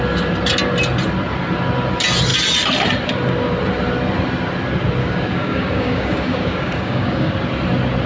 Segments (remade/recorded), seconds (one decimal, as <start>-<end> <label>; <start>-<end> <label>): 0.0-5.0 recorded; 5.0-7.3 remade; 7.3-8.1 recorded